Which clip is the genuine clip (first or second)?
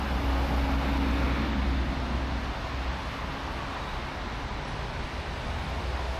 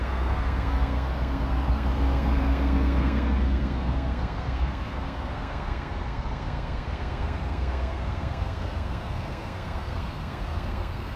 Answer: first